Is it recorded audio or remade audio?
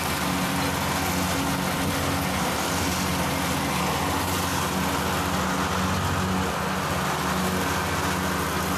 recorded